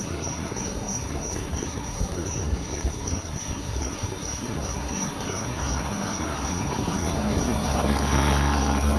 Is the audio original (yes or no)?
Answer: no